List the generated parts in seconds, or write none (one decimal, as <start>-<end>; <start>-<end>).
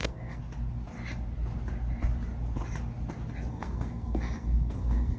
0.0-0.4; 3.5-5.2